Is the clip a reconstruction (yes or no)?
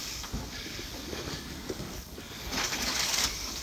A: yes